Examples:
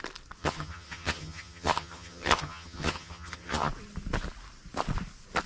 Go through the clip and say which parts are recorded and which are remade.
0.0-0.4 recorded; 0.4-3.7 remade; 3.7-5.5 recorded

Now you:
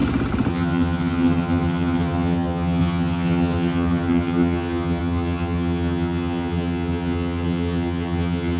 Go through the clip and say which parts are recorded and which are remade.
0.0-0.5 recorded; 0.5-8.6 remade

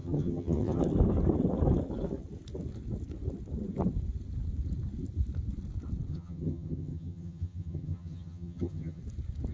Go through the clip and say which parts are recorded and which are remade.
0.0-0.8 remade; 0.8-6.1 recorded; 6.1-9.0 remade; 9.0-9.5 recorded

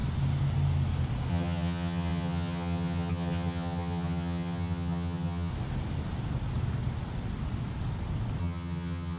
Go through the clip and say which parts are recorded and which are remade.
0.0-1.3 recorded; 1.3-5.5 remade; 5.5-8.4 recorded; 8.4-9.2 remade

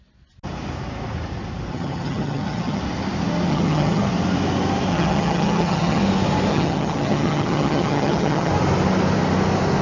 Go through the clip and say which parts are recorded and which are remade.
0.0-1.7 recorded; 1.7-2.8 remade; 2.8-3.5 recorded; 3.5-4.1 remade; 4.1-4.9 recorded; 4.9-6.0 remade; 6.0-6.5 recorded; 6.5-8.5 remade; 8.5-9.8 recorded

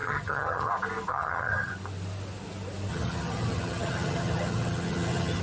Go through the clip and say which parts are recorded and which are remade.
0.0-0.7 remade; 0.7-1.1 recorded; 1.1-1.7 remade; 1.7-2.9 recorded; 2.9-5.4 remade

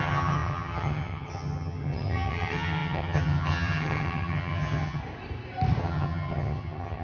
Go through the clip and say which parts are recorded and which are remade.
0.0-5.0 remade; 5.0-5.8 recorded; 5.8-7.0 remade